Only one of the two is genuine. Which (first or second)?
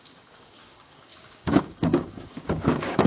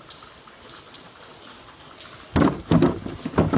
second